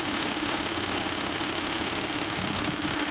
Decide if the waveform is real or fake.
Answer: fake